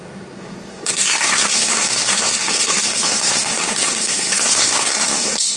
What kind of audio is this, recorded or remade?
remade